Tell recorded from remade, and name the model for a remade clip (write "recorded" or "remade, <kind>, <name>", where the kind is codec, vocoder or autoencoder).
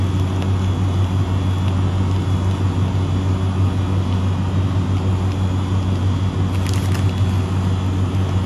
recorded